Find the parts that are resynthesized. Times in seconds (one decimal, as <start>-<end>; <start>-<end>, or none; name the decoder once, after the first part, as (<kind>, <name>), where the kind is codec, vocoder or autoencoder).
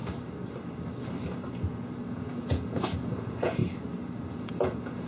2.1-3.6 (vocoder, Vocos); 4.3-5.1